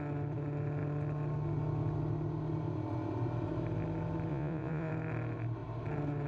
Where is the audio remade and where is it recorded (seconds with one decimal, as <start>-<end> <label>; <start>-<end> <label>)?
0.0-4.3 recorded; 4.3-4.9 remade; 4.9-6.3 recorded